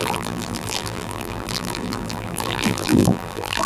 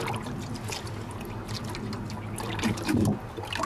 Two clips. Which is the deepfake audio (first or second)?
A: first